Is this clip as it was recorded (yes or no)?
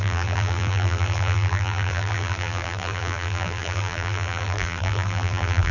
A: no